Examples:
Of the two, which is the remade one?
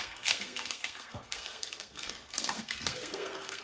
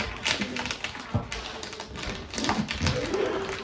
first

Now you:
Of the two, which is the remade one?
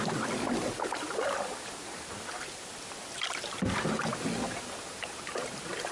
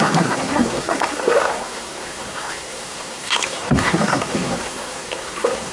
second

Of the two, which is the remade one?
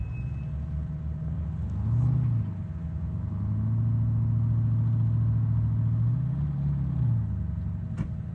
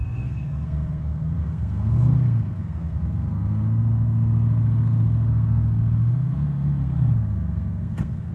second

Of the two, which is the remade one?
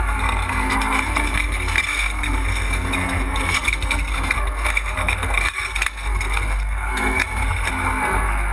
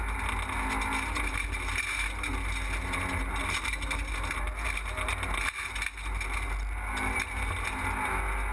first